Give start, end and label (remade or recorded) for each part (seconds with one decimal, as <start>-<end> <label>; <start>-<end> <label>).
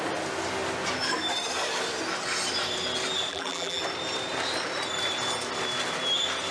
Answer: 0.0-3.3 recorded; 3.3-3.8 remade; 3.8-6.5 recorded